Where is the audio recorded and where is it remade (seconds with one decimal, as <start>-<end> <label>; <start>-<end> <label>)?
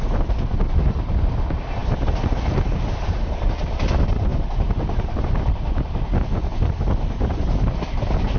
0.0-8.4 recorded